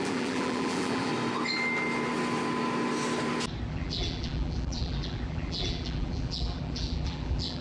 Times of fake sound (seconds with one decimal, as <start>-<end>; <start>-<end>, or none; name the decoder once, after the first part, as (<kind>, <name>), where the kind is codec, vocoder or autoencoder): 0.0-1.1 (vocoder, BigVGAN v2); 3.7-7.6